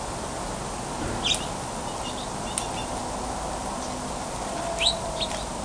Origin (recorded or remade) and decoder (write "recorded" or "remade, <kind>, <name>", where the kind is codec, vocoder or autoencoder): recorded